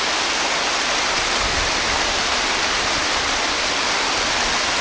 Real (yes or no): yes